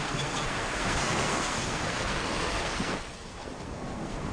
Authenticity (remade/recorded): remade